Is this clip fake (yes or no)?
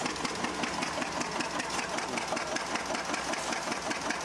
no